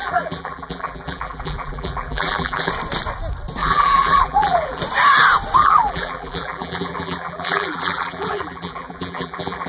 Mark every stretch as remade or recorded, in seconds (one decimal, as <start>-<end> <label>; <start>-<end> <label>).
0.0-2.7 remade; 2.7-3.6 recorded; 3.6-4.8 remade; 4.8-5.6 recorded; 5.6-9.7 remade